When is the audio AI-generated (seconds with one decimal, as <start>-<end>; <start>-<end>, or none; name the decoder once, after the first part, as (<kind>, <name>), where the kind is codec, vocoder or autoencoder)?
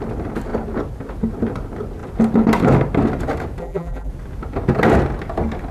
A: 3.6-4.1 (vocoder, BigVGAN v2)